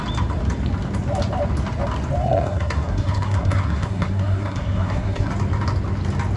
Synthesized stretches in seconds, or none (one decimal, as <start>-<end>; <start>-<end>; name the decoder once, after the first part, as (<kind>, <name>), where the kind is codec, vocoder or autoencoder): 2.2-5.3 (codec, SNAC)